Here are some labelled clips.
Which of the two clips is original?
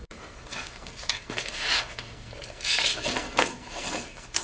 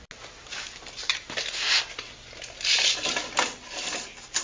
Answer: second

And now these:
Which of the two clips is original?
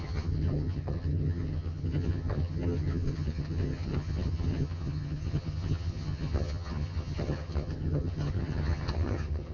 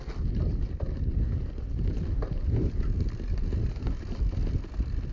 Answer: second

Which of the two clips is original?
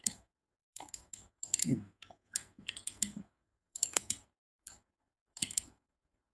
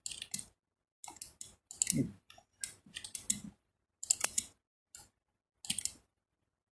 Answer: second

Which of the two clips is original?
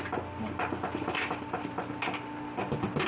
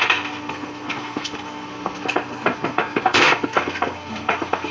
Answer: first